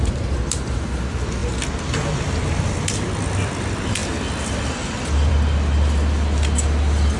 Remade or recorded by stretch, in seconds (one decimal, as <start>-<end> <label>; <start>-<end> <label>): 0.0-7.2 recorded